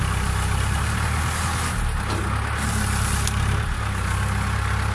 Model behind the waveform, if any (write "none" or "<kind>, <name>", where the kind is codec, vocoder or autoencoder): none